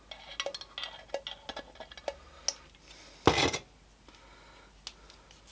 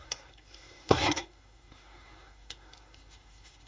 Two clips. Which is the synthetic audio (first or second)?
second